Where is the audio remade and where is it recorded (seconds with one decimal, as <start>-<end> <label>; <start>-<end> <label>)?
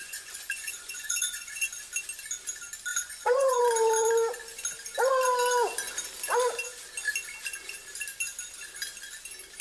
0.0-1.7 remade; 1.7-2.9 recorded; 2.9-3.6 remade; 3.6-9.6 recorded